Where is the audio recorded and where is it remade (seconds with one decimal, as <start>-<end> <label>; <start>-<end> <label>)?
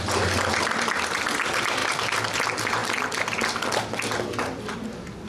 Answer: 0.0-5.3 recorded